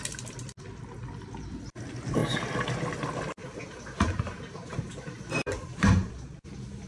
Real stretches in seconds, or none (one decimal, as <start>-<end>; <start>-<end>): 0.0-3.4; 6.1-6.9